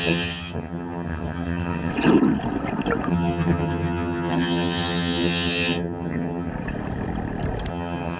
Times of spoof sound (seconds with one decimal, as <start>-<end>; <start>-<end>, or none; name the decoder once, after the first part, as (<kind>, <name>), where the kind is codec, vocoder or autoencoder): 0.0-1.9 (vocoder, HiFi-GAN); 3.1-6.5; 7.7-8.2

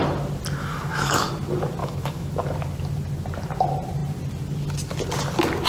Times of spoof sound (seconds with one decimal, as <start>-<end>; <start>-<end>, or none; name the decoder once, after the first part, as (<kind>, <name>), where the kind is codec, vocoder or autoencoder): 0.6-1.3 (autoencoder, DAC-VAE); 1.8-2.3

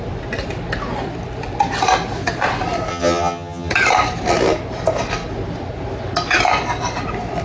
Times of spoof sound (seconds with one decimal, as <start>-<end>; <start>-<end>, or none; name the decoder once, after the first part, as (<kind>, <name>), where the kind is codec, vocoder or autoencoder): 2.9-3.7 (vocoder, HiFi-GAN)

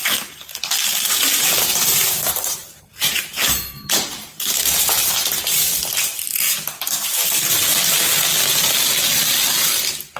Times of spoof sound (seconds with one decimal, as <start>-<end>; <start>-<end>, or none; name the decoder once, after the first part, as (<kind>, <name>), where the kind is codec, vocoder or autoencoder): 0.0-0.4 (vocoder, BigVGAN v2); 1.1-5.6

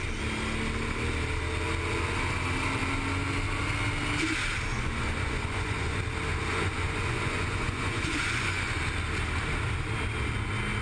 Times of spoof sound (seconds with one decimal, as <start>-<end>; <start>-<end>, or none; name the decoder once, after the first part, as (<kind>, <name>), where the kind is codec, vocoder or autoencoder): 4.7-6.0 (vocoder, Vocos); 6.5-8.8

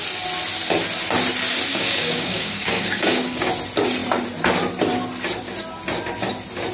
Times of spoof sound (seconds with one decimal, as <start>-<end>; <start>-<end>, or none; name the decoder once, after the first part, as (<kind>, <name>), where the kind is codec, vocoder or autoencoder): 1.7-3.5 (codec, DAC)

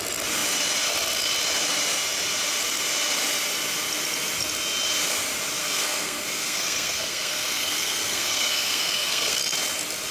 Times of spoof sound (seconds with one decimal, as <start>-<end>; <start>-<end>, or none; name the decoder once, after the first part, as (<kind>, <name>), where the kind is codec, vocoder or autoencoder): 5.6-9.4 (codec, SNAC)